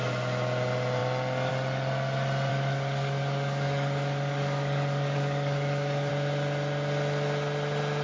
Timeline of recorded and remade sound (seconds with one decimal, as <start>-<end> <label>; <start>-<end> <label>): 0.0-2.5 recorded; 2.5-6.1 remade; 6.1-8.0 recorded